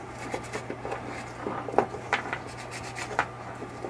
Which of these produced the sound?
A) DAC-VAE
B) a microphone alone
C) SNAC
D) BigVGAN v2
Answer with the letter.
B